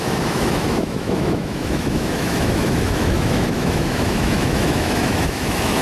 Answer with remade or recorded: remade